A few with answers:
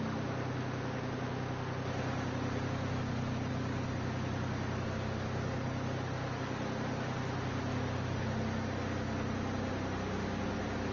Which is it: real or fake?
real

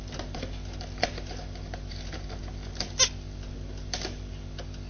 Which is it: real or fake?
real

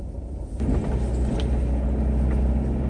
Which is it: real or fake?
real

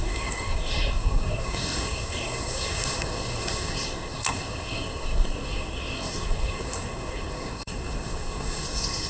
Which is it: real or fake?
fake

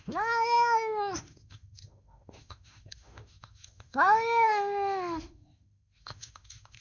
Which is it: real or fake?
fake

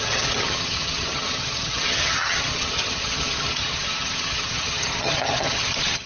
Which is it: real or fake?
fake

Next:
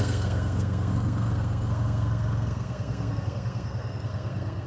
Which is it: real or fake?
fake